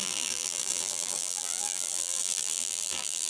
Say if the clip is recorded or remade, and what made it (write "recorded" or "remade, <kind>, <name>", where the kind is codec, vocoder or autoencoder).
remade, vocoder, BigVGAN v2